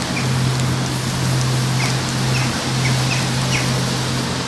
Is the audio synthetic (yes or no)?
no